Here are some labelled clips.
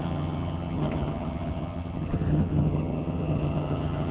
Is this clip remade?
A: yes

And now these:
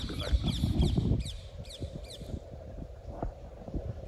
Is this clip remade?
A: yes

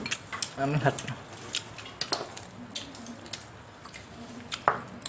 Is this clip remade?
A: no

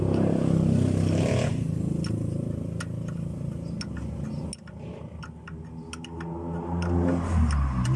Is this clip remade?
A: no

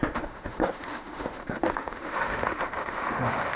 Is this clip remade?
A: yes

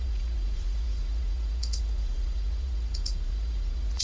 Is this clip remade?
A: yes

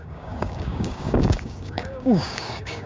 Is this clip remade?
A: yes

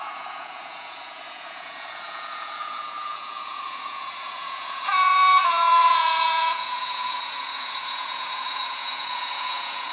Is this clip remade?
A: yes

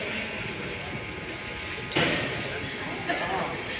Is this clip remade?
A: no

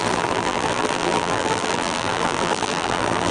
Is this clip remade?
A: yes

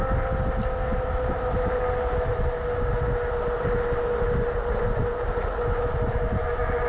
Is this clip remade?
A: no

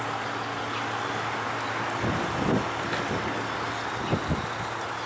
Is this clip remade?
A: no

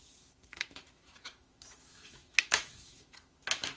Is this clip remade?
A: yes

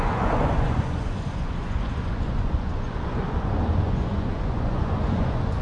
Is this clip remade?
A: yes